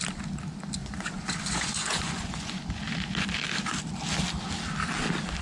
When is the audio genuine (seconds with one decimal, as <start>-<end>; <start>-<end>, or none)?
0.0-0.8; 2.7-5.4